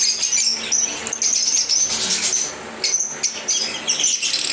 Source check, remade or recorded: recorded